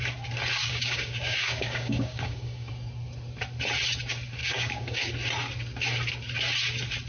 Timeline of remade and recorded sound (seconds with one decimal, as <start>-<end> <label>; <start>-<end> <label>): 0.0-0.6 recorded; 0.6-2.7 remade; 2.7-4.4 recorded; 4.4-5.1 remade; 5.1-7.1 recorded